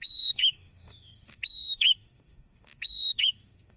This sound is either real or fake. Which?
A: fake